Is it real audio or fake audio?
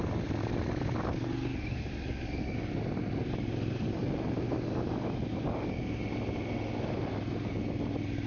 real